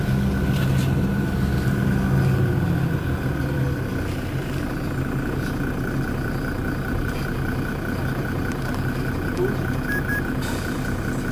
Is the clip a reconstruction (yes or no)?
no